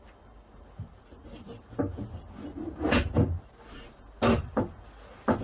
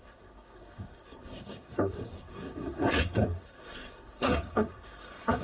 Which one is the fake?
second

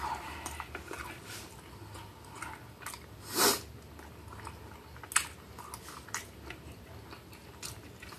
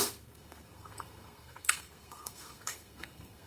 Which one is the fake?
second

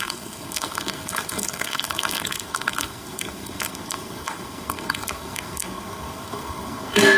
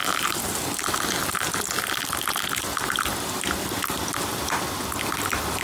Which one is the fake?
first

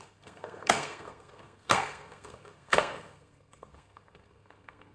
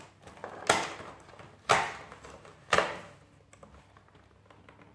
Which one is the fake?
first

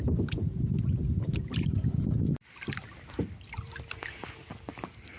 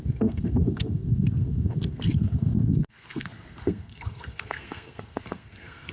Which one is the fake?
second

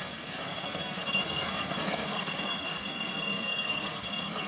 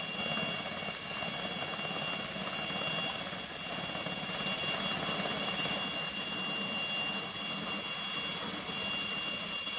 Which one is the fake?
first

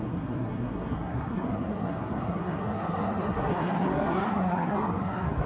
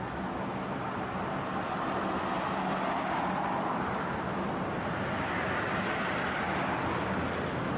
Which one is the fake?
first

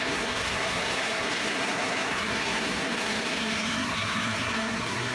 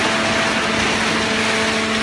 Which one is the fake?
first